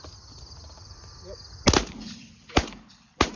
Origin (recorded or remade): recorded